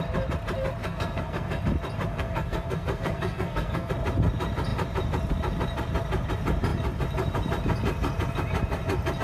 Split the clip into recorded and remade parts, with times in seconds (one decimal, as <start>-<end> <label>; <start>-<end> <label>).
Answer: 0.0-0.8 recorded; 0.8-1.6 remade; 1.6-2.1 recorded; 2.1-3.9 remade; 3.9-9.2 recorded